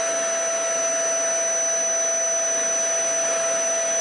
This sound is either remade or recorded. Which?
recorded